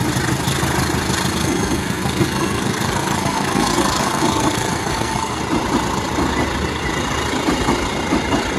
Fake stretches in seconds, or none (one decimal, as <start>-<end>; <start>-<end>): 1.4-5.4